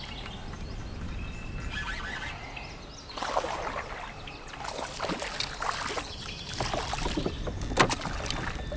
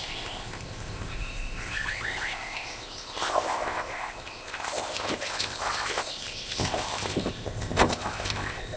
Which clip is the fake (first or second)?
second